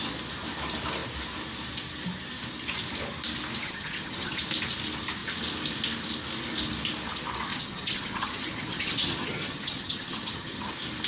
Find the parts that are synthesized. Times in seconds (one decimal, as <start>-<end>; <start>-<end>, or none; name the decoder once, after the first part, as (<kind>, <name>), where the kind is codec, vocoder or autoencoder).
3.6-4.4 (vocoder, HiFi-GAN); 7.5-10.7